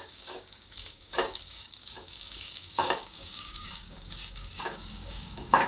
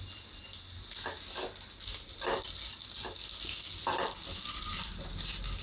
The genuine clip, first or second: second